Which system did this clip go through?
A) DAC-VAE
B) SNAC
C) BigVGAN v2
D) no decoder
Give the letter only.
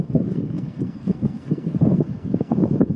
B